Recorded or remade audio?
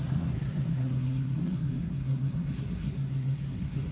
remade